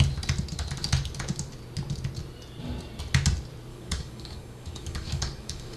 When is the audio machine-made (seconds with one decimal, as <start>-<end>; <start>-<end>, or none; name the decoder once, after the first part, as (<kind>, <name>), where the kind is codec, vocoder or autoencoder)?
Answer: 3.7-5.8 (codec, DAC)